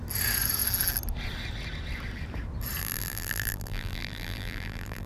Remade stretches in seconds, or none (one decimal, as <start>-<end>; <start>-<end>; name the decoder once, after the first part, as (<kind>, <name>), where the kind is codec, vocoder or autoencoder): 2.8-5.1 (vocoder, BigVGAN v2)